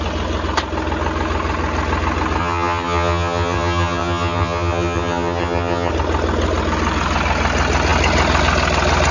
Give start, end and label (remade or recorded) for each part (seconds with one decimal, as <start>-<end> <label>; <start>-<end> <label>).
0.0-2.4 recorded; 2.4-5.9 remade; 5.9-9.1 recorded